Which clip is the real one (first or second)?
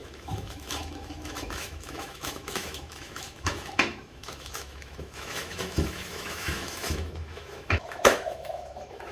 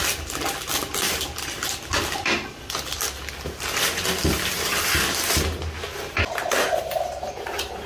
second